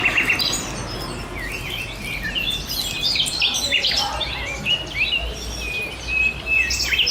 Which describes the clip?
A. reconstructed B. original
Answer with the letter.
B